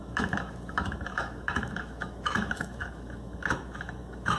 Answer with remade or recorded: remade